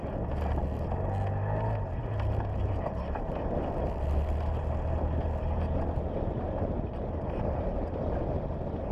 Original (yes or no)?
yes